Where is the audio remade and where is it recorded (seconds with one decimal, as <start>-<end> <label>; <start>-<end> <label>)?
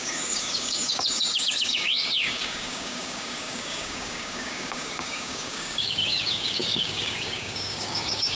0.0-8.3 remade